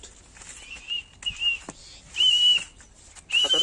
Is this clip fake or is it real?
real